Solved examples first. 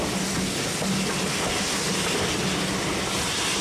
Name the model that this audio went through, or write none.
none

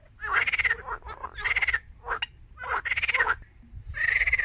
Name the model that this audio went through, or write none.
none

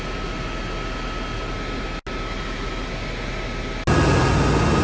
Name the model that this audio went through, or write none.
none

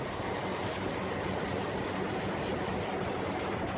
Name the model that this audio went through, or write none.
vocoder, BigVGAN v2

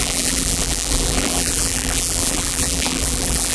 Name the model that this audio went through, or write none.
vocoder, BigVGAN v2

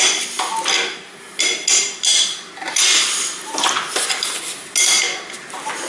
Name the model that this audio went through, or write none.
none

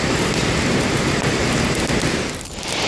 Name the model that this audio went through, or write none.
none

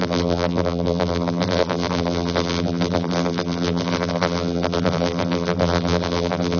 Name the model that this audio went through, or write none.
vocoder, BigVGAN v2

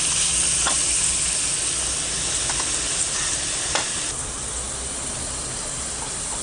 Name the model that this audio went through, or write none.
none